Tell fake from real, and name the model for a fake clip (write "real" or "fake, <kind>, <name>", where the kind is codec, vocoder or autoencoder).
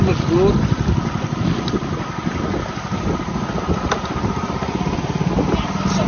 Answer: real